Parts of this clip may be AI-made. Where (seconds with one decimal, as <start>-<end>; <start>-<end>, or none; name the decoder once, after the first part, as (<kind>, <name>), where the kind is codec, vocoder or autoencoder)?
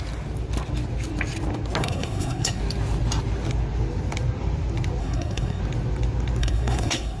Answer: 1.8-2.6 (codec, SNAC); 5.0-5.6; 6.4-7.2